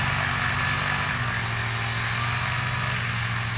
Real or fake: real